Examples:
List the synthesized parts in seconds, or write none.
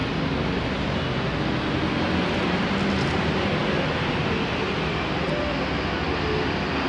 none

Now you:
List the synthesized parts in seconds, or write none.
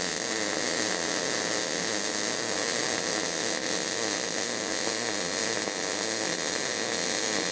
none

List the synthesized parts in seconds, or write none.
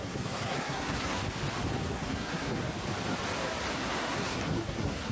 0.0-1.2 (codec, SNAC); 1.8-2.6; 3.7-5.1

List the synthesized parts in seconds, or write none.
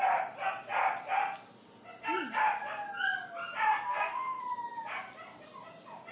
3.7-4.4 (codec, SNAC)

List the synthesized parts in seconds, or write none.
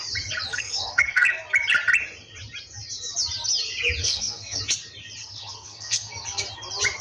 0.5-1.3 (codec, SNAC); 4.0-4.6; 5.2-6.4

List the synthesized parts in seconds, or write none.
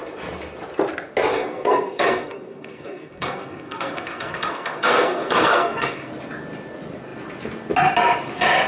1.3-6.1 (codec, SNAC)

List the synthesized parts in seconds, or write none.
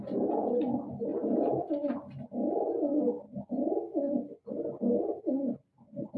none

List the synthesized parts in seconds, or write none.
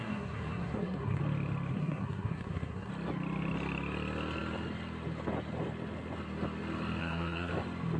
0.0-1.2 (codec, SNAC); 1.7-2.9; 7.0-7.5